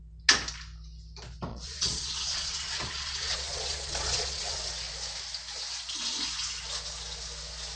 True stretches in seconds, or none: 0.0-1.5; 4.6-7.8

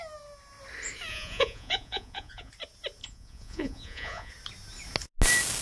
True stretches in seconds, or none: 0.0-1.1; 2.5-3.0; 4.3-5.6